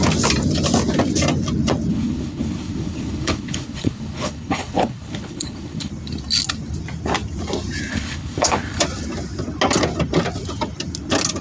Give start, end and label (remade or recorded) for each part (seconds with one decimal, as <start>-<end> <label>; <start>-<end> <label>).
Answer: 0.0-1.9 recorded; 1.9-5.9 remade; 5.9-7.9 recorded; 7.9-8.8 remade; 8.8-11.4 recorded